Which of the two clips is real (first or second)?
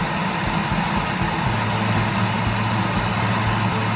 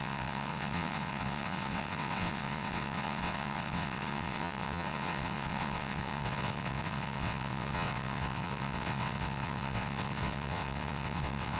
first